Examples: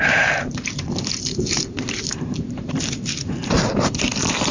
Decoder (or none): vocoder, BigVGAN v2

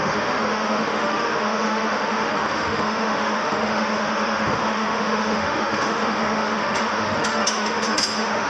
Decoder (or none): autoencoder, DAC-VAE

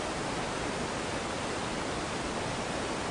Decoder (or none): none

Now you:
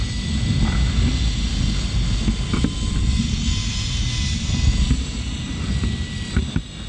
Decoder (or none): none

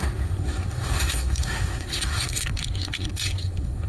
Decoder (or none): codec, SNAC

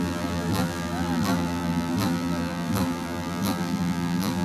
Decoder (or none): vocoder, BigVGAN v2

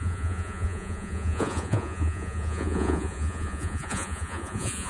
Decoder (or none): vocoder, Vocos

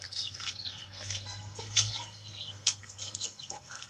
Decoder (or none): codec, SNAC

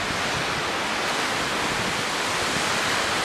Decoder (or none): none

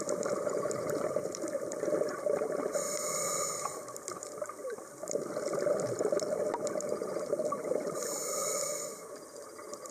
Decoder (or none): vocoder, BigVGAN v2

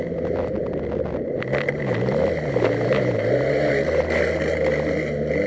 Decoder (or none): none